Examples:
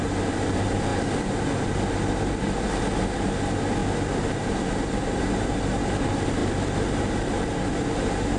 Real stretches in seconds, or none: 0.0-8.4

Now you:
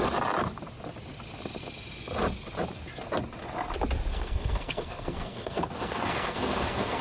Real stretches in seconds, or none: 0.0-4.1

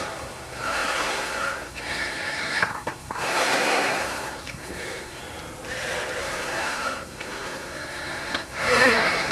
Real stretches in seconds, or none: 5.2-6.2

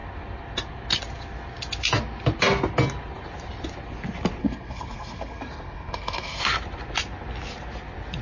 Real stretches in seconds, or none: 0.0-4.4; 6.4-8.2

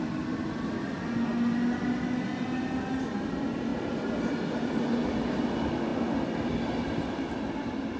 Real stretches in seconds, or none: 0.0-8.0